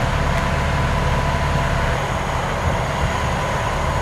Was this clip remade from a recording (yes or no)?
no